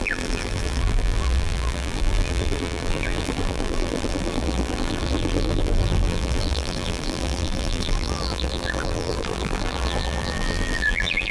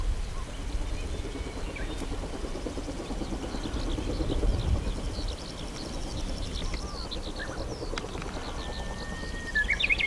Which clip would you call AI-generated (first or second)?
first